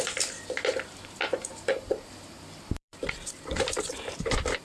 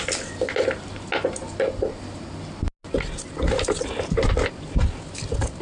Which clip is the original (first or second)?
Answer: second